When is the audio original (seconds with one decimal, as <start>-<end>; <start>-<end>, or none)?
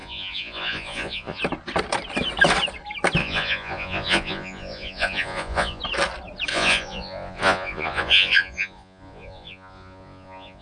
1.4-3.2; 5.8-6.5